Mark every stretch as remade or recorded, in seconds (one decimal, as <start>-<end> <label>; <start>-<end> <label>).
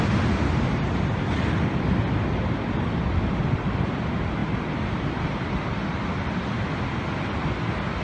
0.0-8.0 recorded